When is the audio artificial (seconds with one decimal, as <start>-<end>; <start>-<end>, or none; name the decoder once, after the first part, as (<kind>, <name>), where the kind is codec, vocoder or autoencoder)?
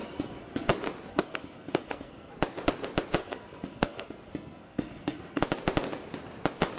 0.0-0.7 (codec, SNAC); 1.1-2.3; 3.2-5.4